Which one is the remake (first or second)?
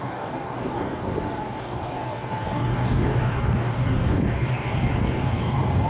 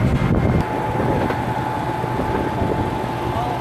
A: first